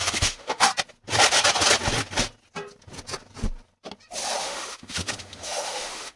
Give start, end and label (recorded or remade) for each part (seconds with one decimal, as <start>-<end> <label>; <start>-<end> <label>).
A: 0.0-0.7 remade; 0.7-4.4 recorded; 4.4-6.2 remade